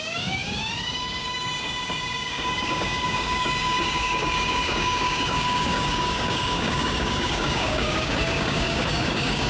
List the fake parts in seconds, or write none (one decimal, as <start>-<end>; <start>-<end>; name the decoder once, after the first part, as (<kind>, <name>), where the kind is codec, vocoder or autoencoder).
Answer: 0.0-9.5 (codec, DAC)